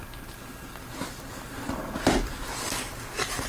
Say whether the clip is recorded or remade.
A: recorded